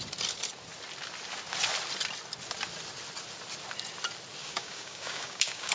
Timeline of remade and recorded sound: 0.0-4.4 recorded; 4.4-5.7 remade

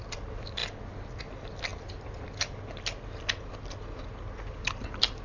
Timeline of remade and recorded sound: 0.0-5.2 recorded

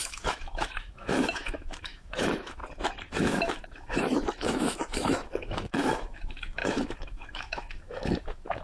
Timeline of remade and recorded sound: 0.0-2.6 remade; 2.6-3.1 recorded; 3.1-8.6 remade

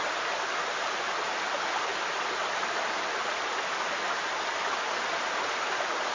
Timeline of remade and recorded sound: 0.0-6.1 recorded